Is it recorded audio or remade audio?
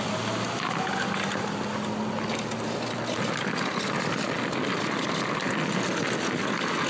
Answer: recorded